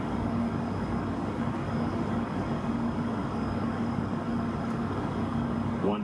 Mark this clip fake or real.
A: fake